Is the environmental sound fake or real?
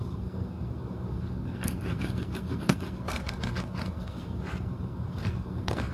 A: fake